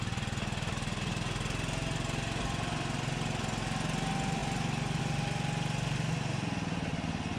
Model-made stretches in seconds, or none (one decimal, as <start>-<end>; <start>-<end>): none